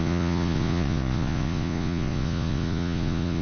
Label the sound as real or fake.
fake